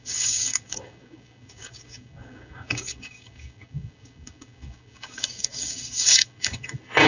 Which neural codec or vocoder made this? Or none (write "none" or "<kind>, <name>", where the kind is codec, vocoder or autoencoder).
codec, DAC